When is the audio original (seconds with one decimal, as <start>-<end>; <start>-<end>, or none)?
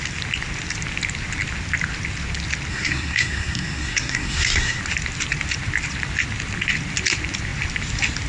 0.0-2.7; 4.8-8.3